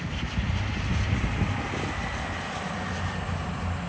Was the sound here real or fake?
real